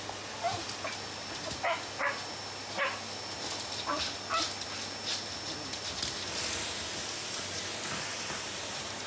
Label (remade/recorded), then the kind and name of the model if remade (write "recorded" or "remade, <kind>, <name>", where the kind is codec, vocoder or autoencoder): recorded